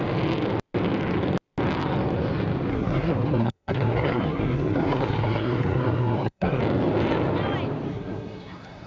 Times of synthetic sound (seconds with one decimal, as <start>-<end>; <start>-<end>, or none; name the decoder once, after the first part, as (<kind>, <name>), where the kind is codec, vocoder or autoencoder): 2.7-6.6 (codec, SNAC); 7.9-8.9